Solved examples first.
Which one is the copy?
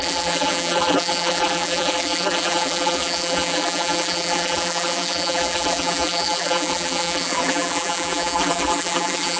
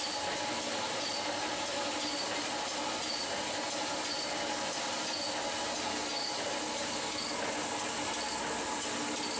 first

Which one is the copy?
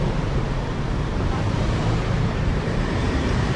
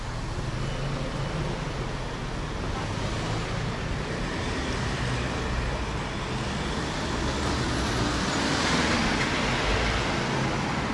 first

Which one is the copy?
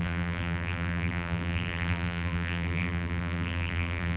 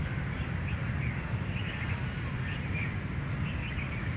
first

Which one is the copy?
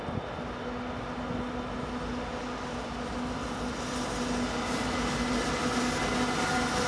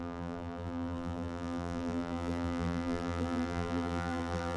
second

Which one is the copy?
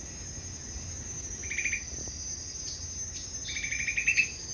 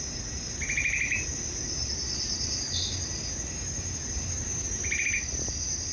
second